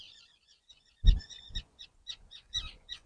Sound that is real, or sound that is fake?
fake